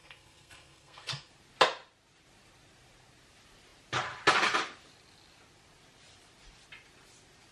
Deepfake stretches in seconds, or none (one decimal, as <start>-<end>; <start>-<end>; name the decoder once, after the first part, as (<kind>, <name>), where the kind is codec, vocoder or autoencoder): 0.0-1.3 (codec, SNAC)